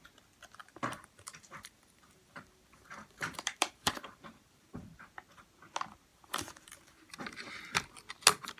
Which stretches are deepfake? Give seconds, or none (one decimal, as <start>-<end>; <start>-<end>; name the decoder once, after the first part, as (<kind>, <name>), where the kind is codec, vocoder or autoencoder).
0.6-5.1 (vocoder, BigVGAN v2); 6.1-7.5